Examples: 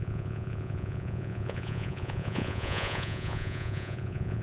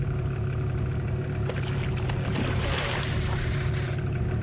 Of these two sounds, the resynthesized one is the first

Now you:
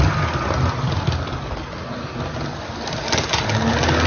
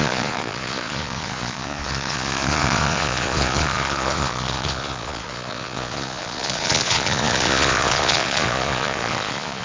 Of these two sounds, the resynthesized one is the second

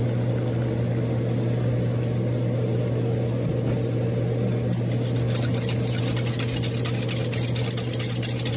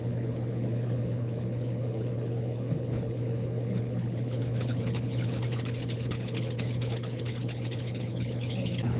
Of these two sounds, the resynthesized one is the second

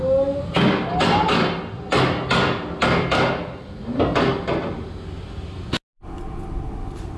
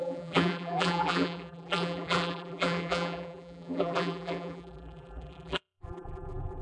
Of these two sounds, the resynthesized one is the second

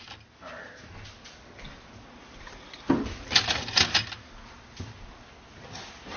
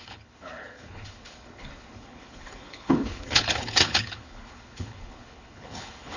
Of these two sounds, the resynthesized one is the second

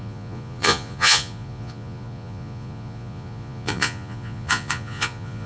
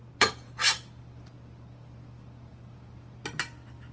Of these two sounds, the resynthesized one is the first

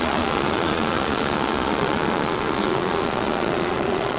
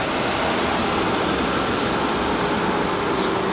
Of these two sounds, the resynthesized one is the first